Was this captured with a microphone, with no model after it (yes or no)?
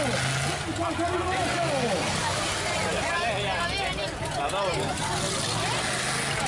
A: yes